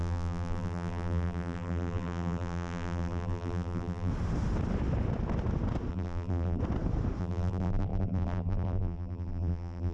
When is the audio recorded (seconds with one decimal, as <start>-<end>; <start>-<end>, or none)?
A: 4.1-5.9; 6.6-7.2